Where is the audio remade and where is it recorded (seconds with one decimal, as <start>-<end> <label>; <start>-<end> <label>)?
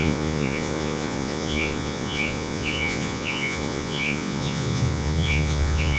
0.0-6.0 remade